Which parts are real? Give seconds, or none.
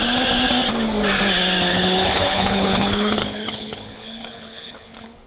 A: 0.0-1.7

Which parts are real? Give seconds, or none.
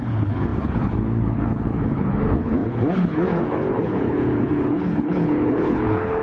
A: none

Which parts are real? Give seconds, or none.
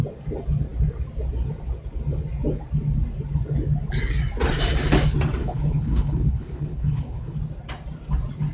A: 0.0-5.4; 7.4-8.5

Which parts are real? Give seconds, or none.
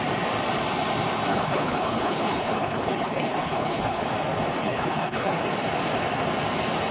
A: 0.0-1.3; 4.0-4.6; 5.4-6.9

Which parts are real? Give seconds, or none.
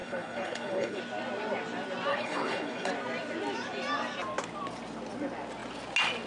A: 1.0-2.1; 2.9-6.3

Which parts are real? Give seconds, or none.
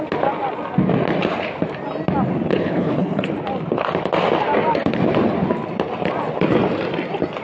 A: 0.0-2.5; 3.2-7.4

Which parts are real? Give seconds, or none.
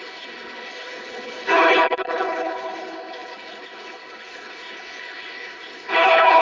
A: none